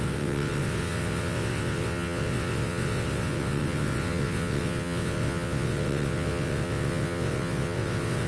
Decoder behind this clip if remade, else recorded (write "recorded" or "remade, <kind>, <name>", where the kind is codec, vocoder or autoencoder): remade, vocoder, WaveNeXt